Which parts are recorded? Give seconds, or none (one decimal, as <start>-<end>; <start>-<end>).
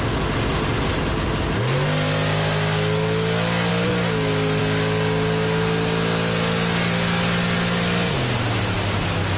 0.0-9.4